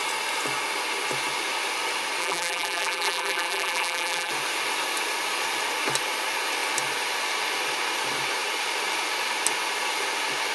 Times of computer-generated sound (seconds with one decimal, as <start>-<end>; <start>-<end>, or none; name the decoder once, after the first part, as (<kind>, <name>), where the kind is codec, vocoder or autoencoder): 2.2-4.3 (vocoder, BigVGAN v2)

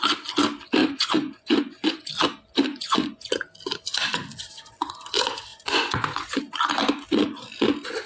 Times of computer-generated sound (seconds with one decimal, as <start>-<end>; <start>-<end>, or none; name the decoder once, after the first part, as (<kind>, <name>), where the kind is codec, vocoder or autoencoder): 0.8-2.1 (vocoder, Vocos); 2.7-3.3; 5.5-6.4

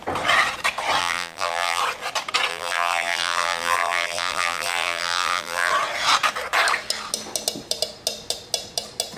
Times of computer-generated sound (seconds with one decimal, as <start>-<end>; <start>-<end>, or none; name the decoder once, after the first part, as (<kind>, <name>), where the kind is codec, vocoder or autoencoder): 1.0-1.8 (vocoder, BigVGAN v2); 2.5-5.7

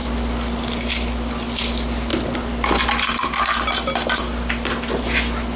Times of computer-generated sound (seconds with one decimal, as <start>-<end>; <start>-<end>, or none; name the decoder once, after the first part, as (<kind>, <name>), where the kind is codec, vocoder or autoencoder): none

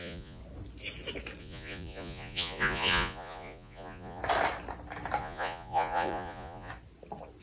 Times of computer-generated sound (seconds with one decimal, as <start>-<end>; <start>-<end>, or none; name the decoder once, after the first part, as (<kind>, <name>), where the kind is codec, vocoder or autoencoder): 0.0-0.4 (vocoder, Vocos); 1.4-4.2; 5.2-6.7

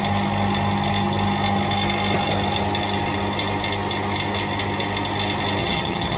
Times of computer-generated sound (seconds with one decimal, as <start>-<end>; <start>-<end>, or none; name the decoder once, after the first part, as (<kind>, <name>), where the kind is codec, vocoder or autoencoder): 5.6-6.2 (vocoder, HiFi-GAN)

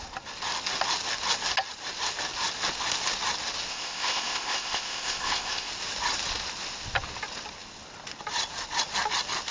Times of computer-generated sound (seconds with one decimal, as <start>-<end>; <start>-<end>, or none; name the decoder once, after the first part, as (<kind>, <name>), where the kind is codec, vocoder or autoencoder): 3.7-5.7 (codec, ZipCodec)